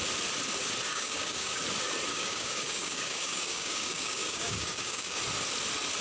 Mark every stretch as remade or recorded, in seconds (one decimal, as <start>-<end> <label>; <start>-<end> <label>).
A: 0.0-0.9 recorded; 0.9-1.6 remade; 1.6-2.1 recorded; 2.1-5.2 remade; 5.2-6.0 recorded